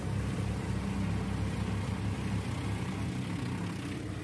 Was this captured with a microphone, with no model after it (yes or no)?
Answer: yes